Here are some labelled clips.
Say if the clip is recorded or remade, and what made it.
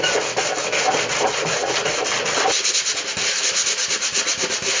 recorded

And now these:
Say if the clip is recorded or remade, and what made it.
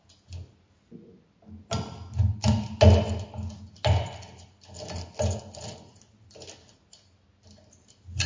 recorded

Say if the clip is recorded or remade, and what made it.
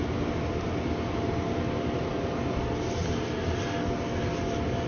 recorded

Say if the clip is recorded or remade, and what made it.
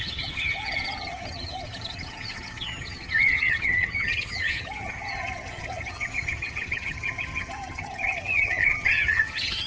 remade, vocoder, HiFi-GAN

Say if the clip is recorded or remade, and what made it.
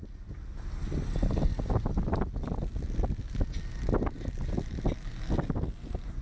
recorded